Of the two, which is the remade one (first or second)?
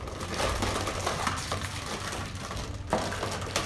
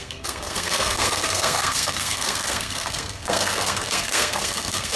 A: second